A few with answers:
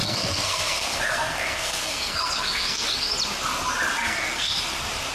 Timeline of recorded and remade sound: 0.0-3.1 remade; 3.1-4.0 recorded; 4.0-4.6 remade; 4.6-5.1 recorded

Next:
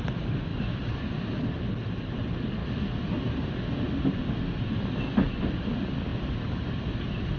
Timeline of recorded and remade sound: 0.0-7.4 recorded

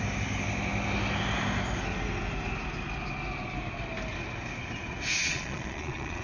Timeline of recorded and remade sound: 0.0-5.2 recorded; 5.2-6.2 remade

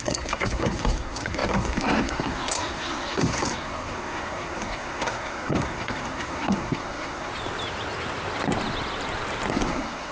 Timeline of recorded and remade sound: 0.0-7.3 remade; 7.3-9.5 recorded; 9.5-10.1 remade